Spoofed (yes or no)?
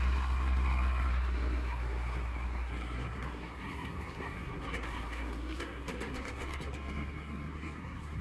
yes